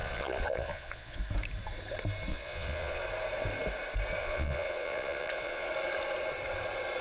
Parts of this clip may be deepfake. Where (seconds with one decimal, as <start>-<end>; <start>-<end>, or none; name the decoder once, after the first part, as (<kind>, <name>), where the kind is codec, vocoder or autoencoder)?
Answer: 0.0-1.2 (vocoder, Vocos); 2.3-3.0; 4.2-5.7